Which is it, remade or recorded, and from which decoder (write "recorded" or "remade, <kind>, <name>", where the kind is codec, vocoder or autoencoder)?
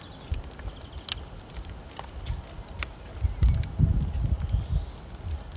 recorded